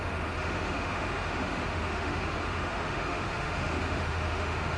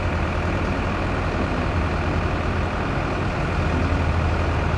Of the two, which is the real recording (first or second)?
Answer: second